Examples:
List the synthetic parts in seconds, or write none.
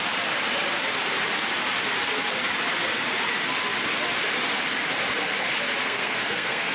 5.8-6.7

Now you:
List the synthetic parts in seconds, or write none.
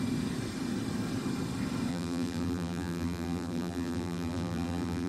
1.9-5.1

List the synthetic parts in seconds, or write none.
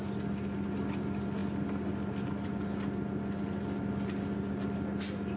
none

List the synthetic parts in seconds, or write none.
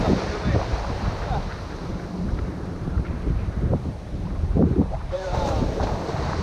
1.9-5.7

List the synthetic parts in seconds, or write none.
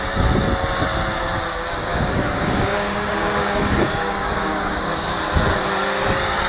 1.9-5.1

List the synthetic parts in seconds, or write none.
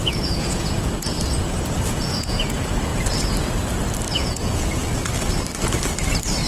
0.0-1.1; 1.9-2.9; 4.2-4.8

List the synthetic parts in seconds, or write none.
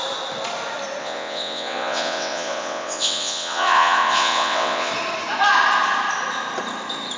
1.0-4.9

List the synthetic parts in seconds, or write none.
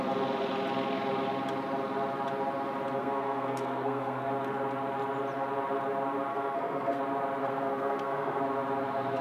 3.0-4.3; 6.3-7.0; 7.4-8.4